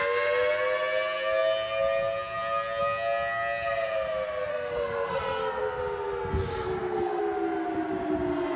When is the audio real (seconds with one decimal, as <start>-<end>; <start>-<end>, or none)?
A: 0.0-4.5; 5.6-6.5; 7.2-8.6